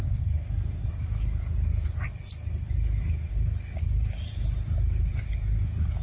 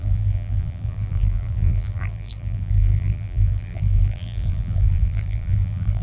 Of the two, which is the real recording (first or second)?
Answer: first